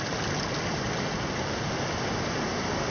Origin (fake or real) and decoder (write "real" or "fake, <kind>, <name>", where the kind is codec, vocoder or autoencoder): real